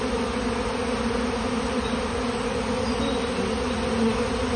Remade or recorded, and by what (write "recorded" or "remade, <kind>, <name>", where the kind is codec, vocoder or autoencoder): recorded